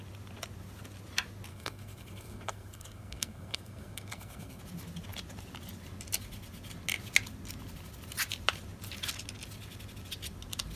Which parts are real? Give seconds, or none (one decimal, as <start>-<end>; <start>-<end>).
0.0-1.5; 4.6-10.8